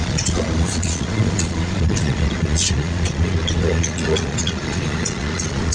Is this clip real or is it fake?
fake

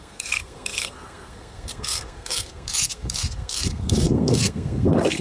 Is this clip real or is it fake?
fake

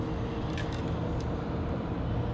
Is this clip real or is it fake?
real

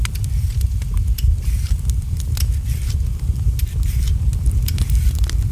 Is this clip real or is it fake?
real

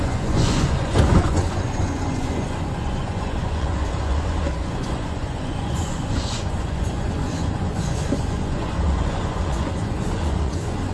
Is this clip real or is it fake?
fake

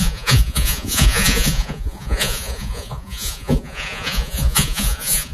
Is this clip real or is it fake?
fake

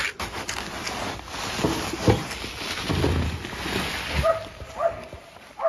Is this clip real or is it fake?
real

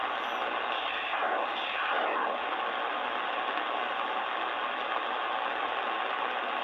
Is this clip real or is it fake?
real